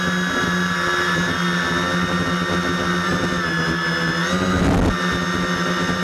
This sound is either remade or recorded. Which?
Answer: recorded